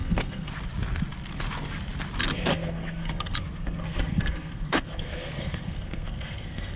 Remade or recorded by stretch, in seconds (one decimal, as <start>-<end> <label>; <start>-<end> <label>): 0.0-0.5 remade; 0.5-2.5 recorded; 2.5-6.8 remade